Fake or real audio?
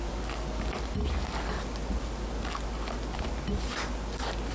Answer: real